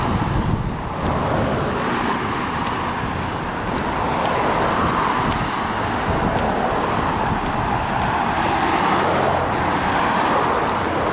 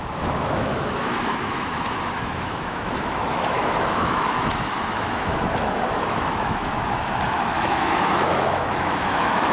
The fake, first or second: second